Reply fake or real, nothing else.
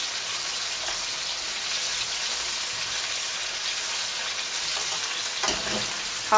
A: real